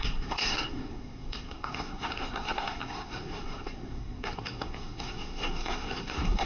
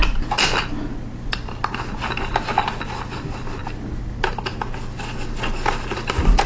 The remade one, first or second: first